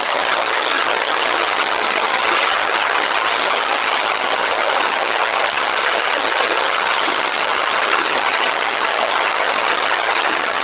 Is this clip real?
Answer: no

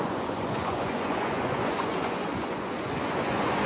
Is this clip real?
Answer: no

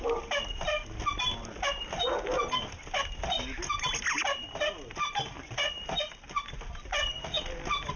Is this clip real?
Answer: yes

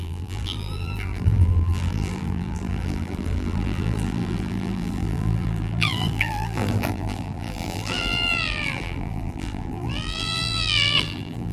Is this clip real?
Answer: no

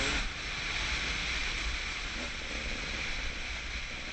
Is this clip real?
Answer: yes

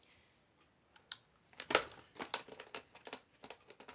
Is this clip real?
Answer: yes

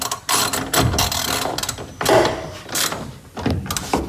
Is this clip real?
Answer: yes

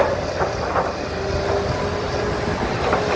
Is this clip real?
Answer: yes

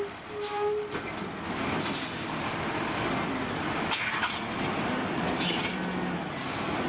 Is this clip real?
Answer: yes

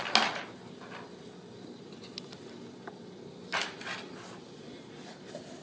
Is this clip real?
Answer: yes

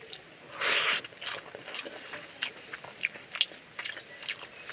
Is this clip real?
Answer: yes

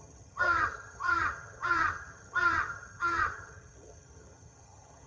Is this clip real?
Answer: no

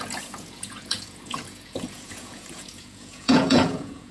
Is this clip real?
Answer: no